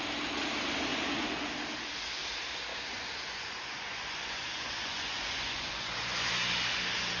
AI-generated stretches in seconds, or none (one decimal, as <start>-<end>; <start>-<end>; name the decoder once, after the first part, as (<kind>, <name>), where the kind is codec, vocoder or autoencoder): 0.9-1.5 (vocoder, Vocos); 2.7-6.3